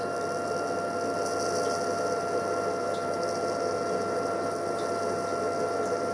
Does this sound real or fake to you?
real